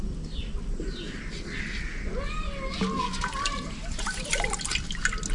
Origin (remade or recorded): recorded